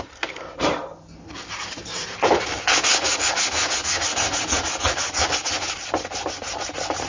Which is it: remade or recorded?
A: recorded